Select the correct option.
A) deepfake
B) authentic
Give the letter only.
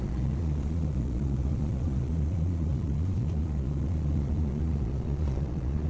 A